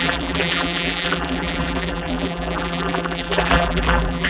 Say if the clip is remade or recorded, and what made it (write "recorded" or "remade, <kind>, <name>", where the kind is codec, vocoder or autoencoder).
remade, vocoder, BigVGAN v2